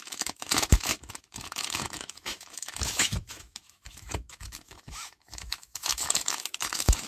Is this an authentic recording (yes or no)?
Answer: no